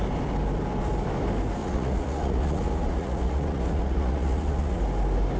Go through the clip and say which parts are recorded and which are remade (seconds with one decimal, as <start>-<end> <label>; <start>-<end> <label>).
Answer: 0.0-1.6 recorded; 1.6-4.8 remade; 4.8-5.4 recorded